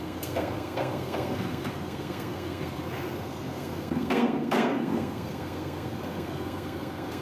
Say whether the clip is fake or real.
fake